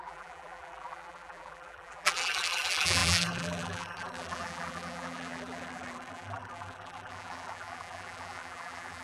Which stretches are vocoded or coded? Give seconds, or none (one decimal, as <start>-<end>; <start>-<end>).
0.0-9.0